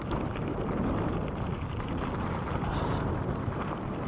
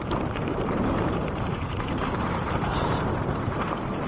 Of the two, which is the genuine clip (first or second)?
first